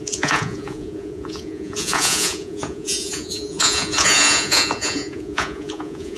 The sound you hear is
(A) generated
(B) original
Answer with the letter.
A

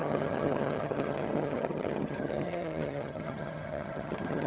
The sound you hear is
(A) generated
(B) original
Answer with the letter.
A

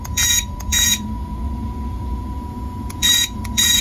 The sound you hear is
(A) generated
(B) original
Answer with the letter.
A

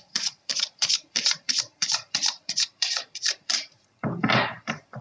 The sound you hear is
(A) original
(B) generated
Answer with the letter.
B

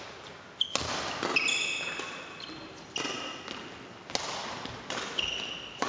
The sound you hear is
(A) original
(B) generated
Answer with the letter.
A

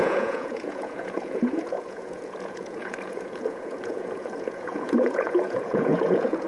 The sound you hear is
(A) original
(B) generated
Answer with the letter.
B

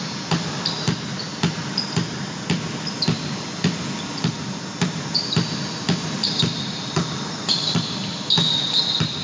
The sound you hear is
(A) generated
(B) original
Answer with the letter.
A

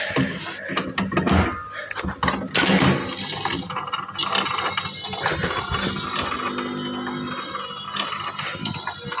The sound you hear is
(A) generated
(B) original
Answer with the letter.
B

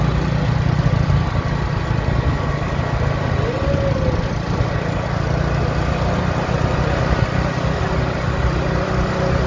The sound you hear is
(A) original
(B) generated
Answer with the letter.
A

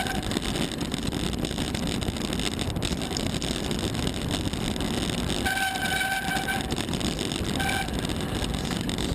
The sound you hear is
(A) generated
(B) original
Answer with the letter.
B